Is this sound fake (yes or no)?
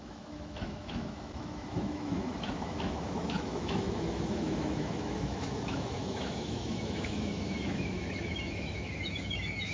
yes